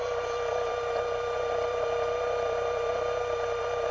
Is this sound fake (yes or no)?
yes